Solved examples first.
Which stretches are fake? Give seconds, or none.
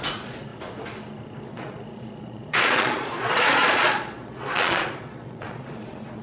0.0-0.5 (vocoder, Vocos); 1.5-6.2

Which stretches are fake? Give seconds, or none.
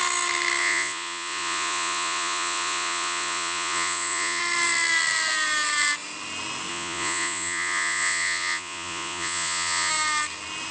0.6-4.4 (vocoder, Vocos); 6.7-9.9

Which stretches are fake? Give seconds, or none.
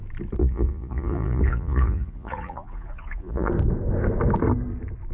0.4-3.5 (vocoder, Vocos)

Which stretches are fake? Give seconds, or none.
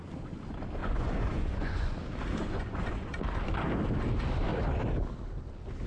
0.8-2.0 (vocoder, Vocos); 2.4-3.1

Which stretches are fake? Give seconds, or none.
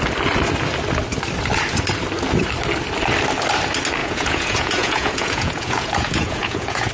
4.0-6.9 (vocoder, Vocos)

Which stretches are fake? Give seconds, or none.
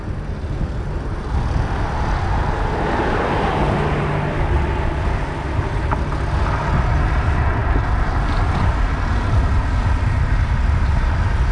none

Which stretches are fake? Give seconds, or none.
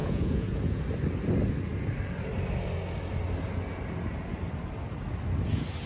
0.0-0.8 (vocoder, Vocos)